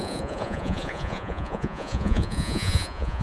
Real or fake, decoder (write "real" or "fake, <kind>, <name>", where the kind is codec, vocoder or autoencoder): fake, vocoder, Vocos